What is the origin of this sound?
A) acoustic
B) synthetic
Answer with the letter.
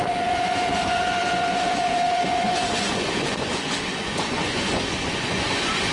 B